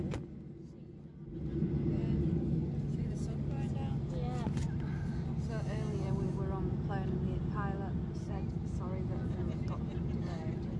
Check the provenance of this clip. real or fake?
real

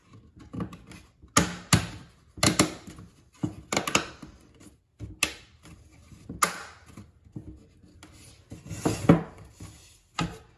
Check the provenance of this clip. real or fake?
real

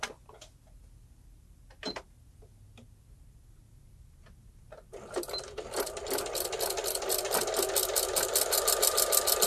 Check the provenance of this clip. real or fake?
real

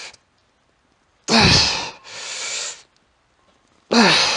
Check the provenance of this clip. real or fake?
real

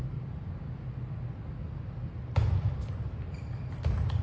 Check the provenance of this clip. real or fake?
real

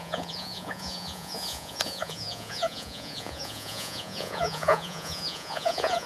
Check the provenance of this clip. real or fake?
fake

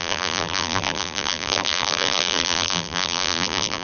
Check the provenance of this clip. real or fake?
fake